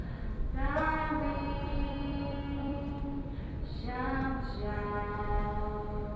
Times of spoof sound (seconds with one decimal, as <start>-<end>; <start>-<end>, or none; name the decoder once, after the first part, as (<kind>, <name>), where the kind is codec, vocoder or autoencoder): 1.7-2.9 (vocoder, BigVGAN v2)